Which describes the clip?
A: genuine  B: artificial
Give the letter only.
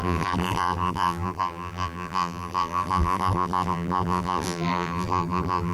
B